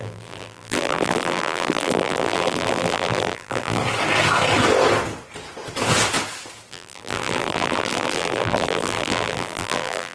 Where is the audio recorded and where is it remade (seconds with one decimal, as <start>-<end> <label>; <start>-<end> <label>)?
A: 0.0-3.8 remade; 3.8-6.7 recorded; 6.7-10.1 remade